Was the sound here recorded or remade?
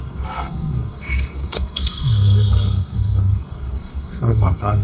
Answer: remade